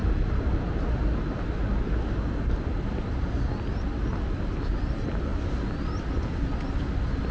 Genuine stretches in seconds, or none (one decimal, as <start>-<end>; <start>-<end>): 0.0-7.3

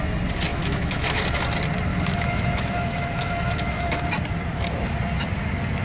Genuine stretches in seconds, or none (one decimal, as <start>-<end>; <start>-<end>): 0.0-0.5; 1.2-1.9; 4.0-5.8

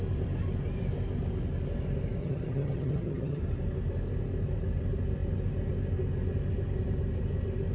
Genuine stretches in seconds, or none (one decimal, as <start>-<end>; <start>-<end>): 0.0-2.2; 3.4-7.7

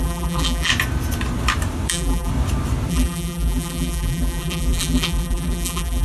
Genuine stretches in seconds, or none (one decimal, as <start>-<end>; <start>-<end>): 0.7-1.9; 2.3-2.9

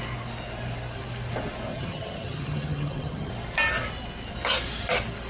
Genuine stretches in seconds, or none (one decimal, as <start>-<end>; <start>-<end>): 0.0-1.7; 3.3-5.3

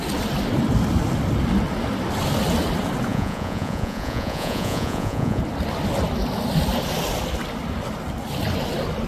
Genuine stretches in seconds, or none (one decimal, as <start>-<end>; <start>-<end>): 0.0-3.1; 5.4-9.1

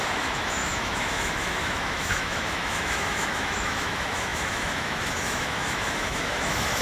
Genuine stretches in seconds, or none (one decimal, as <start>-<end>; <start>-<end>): none